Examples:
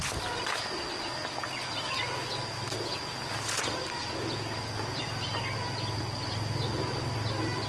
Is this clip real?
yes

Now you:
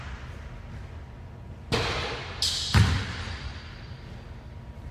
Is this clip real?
yes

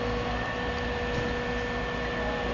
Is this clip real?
yes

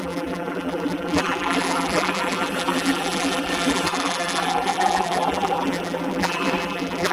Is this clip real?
no